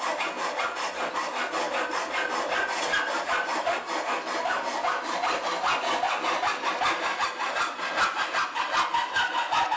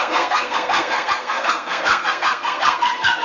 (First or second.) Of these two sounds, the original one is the first